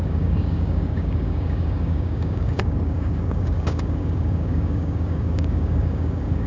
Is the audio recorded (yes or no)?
no